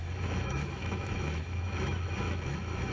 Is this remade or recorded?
remade